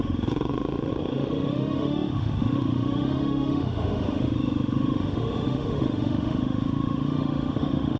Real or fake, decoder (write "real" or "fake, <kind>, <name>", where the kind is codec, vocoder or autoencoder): fake, autoencoder, DAC-VAE